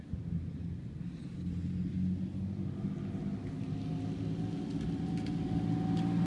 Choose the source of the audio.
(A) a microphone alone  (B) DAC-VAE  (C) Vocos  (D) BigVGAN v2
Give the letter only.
A